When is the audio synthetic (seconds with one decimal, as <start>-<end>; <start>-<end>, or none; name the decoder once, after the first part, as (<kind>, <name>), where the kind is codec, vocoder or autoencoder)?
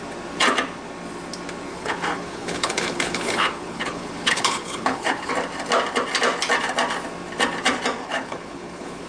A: 1.7-5.3 (codec, HILCodec); 8.0-9.1